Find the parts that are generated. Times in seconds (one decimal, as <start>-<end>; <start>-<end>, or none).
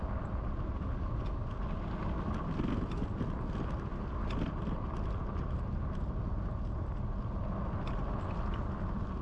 none